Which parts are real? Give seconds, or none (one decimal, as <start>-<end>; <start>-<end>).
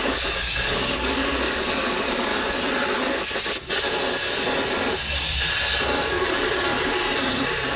2.3-6.1; 6.7-7.8